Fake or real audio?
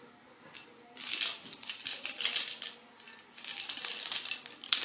real